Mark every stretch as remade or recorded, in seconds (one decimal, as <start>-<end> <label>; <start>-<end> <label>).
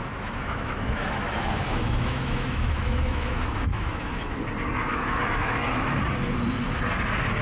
0.0-4.4 remade; 4.4-4.9 recorded; 4.9-6.0 remade; 6.0-7.4 recorded